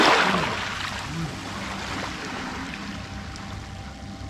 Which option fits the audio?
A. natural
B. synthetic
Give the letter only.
A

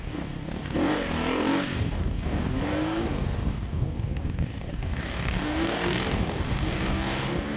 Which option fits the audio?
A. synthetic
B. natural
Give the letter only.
A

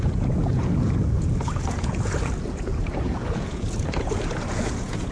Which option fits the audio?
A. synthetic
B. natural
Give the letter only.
A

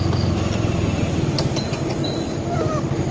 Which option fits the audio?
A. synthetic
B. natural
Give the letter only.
B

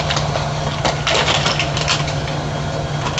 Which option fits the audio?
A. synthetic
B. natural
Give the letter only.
B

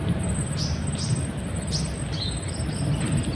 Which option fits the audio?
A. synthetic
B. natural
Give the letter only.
B